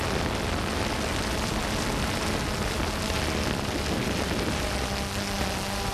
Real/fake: real